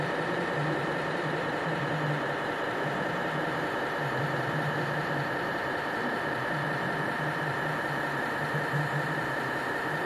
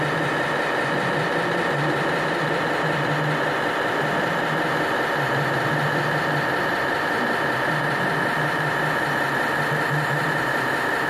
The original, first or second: second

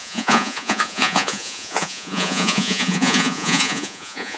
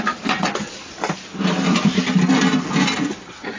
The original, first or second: second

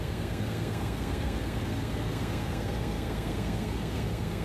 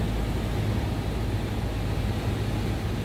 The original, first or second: second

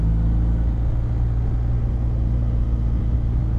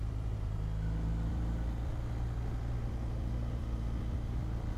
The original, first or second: first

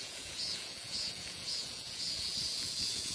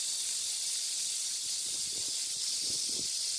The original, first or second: second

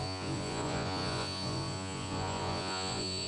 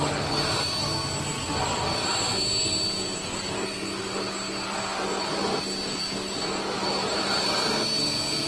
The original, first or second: second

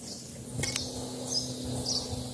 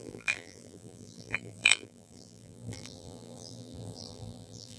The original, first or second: first